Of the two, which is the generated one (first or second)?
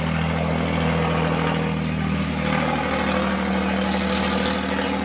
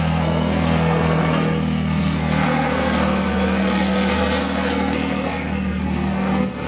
second